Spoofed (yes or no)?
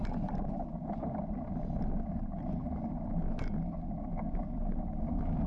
no